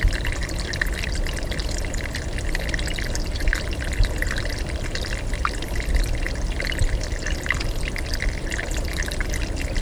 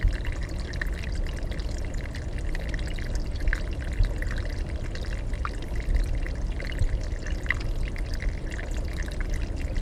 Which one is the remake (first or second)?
first